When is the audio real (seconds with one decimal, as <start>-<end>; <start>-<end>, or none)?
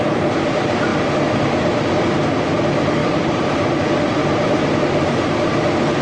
0.0-3.0; 3.8-4.2; 4.8-6.0